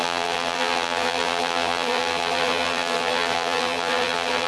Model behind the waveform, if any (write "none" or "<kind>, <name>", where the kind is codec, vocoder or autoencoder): vocoder, BigVGAN v2